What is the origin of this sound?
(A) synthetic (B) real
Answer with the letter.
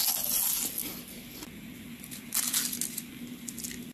B